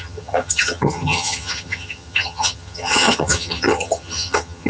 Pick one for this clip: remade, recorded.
remade